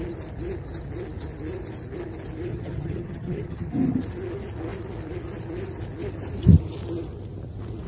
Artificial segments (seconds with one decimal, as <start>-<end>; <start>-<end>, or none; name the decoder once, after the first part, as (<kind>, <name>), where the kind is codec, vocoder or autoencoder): 2.5-3.7 (vocoder, HiFi-GAN)